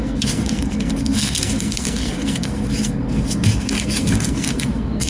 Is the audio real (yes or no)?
no